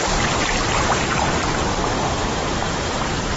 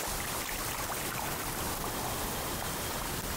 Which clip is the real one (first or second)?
second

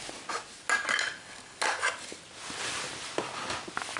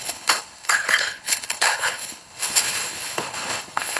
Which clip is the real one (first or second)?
first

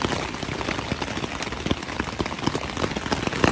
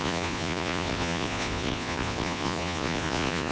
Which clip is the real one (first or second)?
first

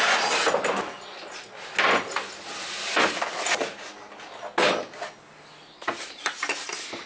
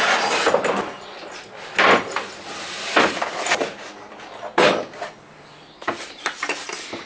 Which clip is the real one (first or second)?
first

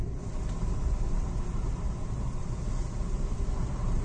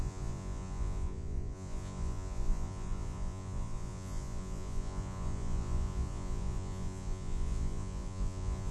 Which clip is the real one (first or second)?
first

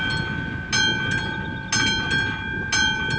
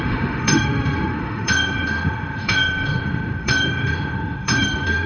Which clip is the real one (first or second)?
first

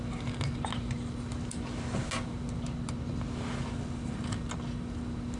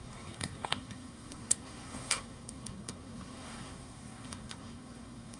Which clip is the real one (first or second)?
first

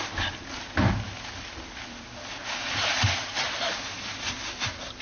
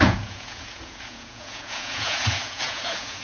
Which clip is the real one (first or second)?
first